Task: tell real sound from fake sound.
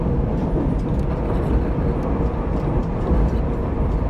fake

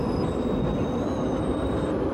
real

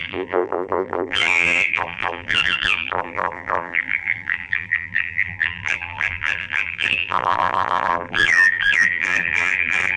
fake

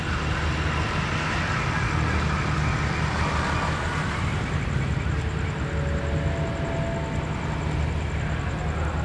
real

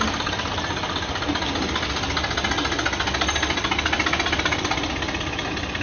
real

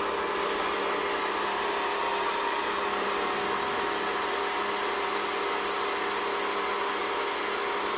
real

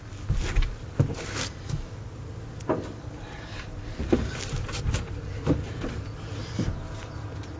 fake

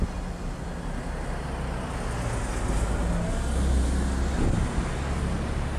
real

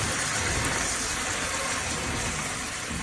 fake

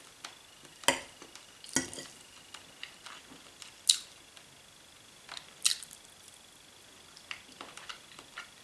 real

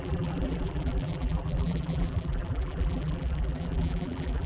fake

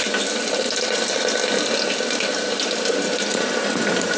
real